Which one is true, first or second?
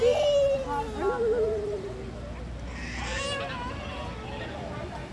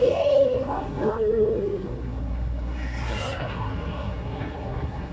first